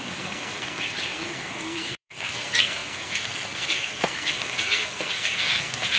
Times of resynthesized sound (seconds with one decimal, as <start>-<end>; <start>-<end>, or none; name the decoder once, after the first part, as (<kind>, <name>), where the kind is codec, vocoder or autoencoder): 0.0-6.0 (codec, SNAC)